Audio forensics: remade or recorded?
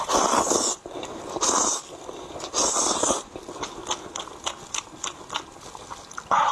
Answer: recorded